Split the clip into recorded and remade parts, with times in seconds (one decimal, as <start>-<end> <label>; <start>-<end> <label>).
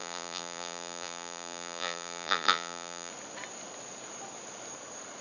0.0-3.1 remade; 3.1-5.2 recorded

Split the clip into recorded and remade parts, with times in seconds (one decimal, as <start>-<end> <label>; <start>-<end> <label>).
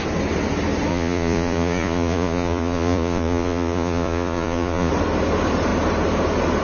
0.0-0.9 recorded; 0.9-4.9 remade; 4.9-6.6 recorded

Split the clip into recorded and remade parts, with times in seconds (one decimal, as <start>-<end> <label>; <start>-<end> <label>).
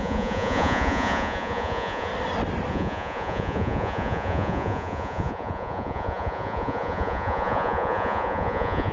0.0-2.1 remade; 2.1-2.7 recorded; 2.7-8.9 remade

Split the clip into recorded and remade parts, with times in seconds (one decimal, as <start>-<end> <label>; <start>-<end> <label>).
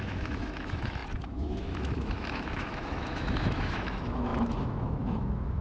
0.0-5.6 remade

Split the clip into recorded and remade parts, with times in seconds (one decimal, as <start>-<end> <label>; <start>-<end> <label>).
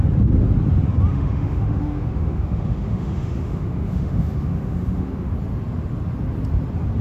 0.0-1.1 recorded; 1.1-5.3 remade; 5.3-7.0 recorded